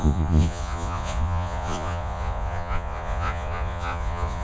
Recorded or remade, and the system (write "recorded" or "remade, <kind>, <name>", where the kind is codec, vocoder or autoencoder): remade, vocoder, Vocos